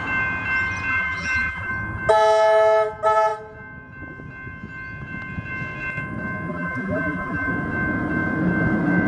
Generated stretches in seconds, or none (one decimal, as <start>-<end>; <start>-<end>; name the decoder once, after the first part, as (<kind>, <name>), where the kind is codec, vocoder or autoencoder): 0.9-1.7 (vocoder, BigVGAN v2); 6.5-7.5